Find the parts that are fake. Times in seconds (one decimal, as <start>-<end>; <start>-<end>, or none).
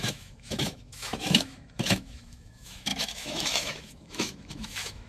0.0-5.1